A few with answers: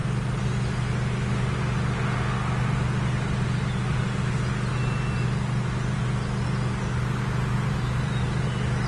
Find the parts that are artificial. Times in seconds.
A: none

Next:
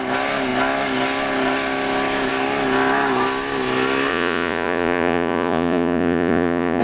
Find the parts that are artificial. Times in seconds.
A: 4.1-6.8 (vocoder, Vocos)

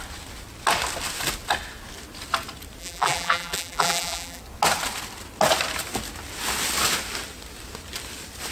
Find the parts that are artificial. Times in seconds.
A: 2.8-4.4 (vocoder, BigVGAN v2)

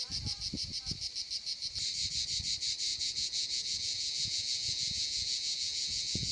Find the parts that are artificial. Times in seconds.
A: 2.9-6.3 (vocoder, Vocos)

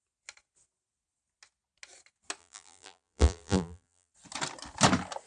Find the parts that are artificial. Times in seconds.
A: 2.4-4.1 (vocoder, BigVGAN v2)

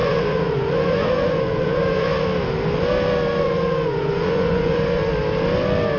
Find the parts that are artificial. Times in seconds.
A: 0.0-2.1 (vocoder, Vocos); 3.4-5.0